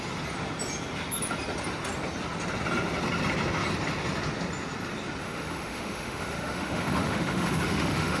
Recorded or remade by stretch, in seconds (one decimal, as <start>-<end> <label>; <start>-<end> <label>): 0.0-5.2 recorded; 5.2-8.2 remade